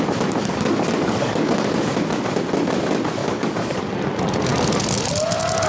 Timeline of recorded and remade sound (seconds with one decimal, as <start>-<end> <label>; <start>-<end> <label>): 0.0-0.4 recorded; 0.4-1.9 remade; 1.9-3.2 recorded; 3.2-3.8 remade; 3.8-5.7 recorded